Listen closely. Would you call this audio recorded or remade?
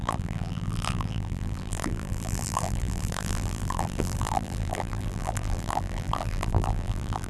remade